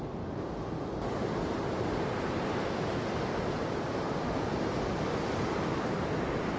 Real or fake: real